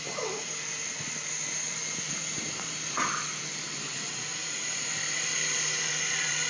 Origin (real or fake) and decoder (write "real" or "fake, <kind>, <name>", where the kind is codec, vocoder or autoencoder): fake, vocoder, BigVGAN v2